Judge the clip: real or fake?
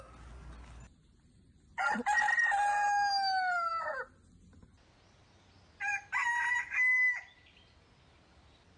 real